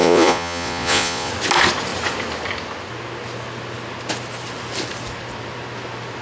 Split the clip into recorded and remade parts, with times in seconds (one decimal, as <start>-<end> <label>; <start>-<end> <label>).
0.0-1.3 remade; 1.3-6.2 recorded